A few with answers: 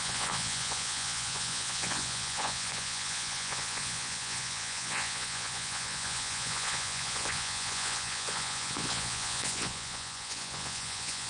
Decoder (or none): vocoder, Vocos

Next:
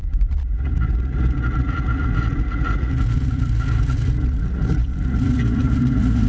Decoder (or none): vocoder, Vocos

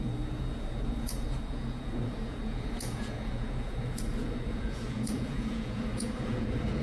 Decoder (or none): vocoder, Vocos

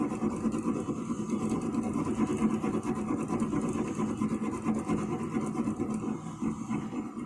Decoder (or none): none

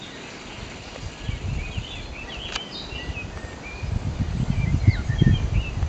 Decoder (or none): none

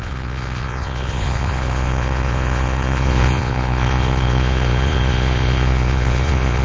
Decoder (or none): vocoder, Vocos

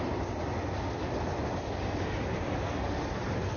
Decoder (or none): none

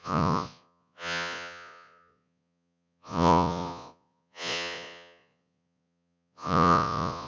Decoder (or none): vocoder, Vocos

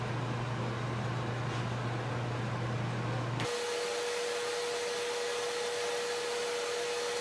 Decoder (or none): none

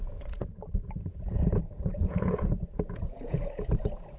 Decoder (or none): vocoder, Vocos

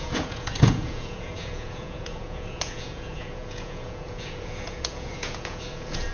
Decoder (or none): vocoder, Vocos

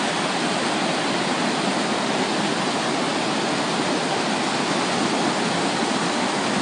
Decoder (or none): none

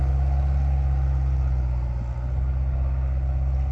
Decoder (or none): none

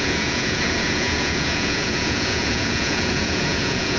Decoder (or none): vocoder, Vocos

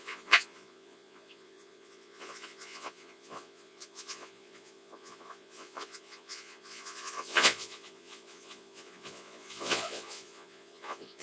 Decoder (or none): vocoder, Vocos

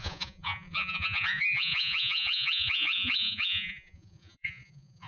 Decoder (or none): vocoder, Vocos